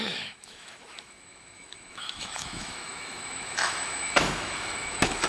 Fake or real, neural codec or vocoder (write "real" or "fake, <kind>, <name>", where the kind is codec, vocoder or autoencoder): fake, autoencoder, DAC-VAE